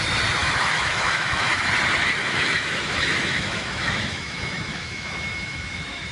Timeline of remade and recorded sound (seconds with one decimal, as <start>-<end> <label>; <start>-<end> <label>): 0.0-0.4 recorded; 0.4-1.7 remade; 1.7-2.2 recorded; 2.2-6.1 remade